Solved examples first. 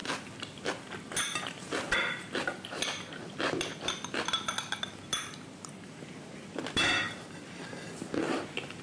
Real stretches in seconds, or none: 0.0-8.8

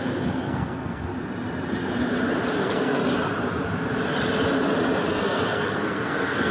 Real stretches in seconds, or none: 1.1-2.6; 3.0-5.1

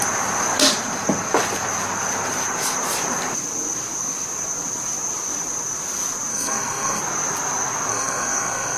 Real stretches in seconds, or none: 0.0-6.3; 7.0-7.9

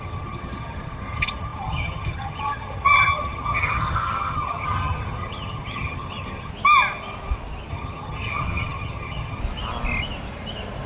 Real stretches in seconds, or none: 6.5-7.7; 9.4-10.9

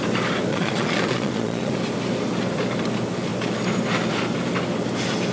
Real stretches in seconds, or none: 0.0-0.5; 1.7-5.3

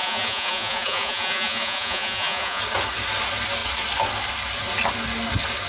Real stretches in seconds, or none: 2.6-5.7

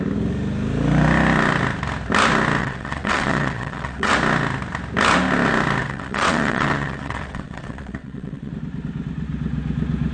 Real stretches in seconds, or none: 0.0-2.6; 4.1-5.8; 8.5-10.1